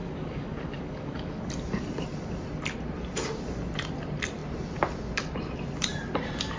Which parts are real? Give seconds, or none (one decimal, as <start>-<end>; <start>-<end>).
1.4-6.6